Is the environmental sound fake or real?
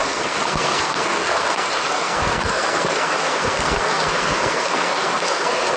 fake